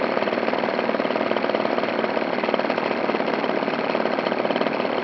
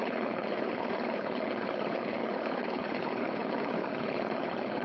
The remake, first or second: second